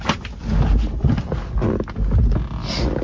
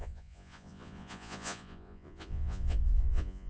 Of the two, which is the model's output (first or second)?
second